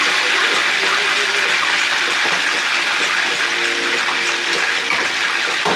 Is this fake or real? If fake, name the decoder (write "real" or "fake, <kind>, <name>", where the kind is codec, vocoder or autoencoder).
real